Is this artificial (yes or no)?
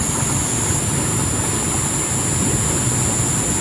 no